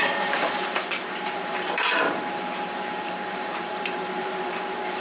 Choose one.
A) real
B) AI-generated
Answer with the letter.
B